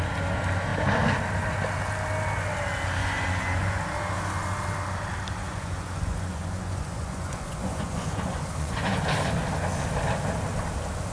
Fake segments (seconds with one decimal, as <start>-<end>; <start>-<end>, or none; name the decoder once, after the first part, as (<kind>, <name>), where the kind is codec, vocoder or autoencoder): 3.0-3.8 (vocoder, Vocos); 5.4-9.0